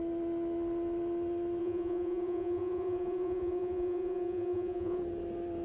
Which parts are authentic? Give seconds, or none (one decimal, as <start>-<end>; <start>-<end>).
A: 0.0-1.6; 5.0-5.6